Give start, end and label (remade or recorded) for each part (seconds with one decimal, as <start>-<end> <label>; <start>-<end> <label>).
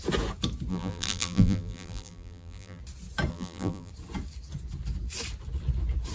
0.0-0.7 recorded; 0.7-2.8 remade; 2.8-3.3 recorded; 3.3-3.9 remade; 3.9-6.1 recorded